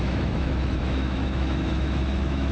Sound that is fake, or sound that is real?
fake